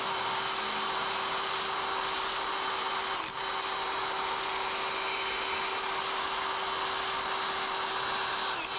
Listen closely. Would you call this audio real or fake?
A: real